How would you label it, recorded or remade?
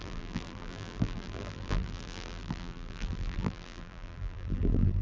remade